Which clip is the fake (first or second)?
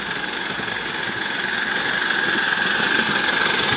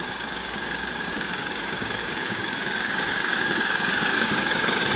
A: second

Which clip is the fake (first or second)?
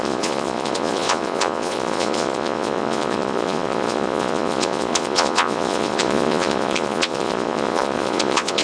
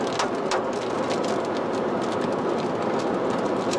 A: first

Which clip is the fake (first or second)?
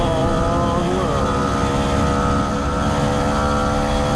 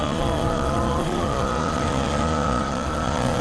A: second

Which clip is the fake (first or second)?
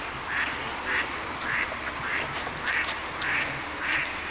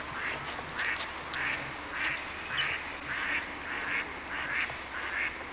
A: first